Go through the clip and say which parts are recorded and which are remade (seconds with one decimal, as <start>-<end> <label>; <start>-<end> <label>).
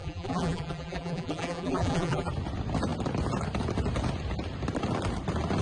0.0-2.3 remade; 2.3-5.6 recorded